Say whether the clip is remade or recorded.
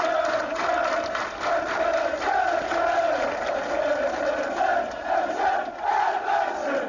recorded